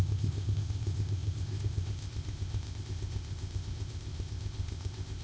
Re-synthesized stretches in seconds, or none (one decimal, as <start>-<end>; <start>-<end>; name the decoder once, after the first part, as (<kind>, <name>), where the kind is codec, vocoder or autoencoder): 0.0-5.2 (codec, ZipCodec)